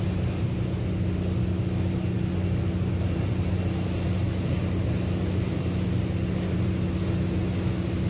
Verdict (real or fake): real